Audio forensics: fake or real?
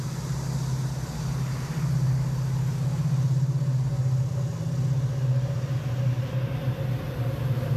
real